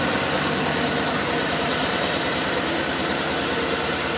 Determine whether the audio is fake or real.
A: fake